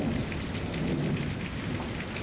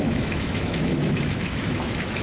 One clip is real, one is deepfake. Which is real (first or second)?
first